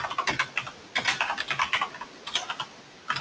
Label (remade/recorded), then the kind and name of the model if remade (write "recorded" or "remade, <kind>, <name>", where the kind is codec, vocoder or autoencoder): recorded